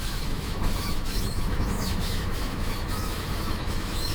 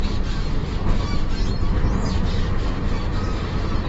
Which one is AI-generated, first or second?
first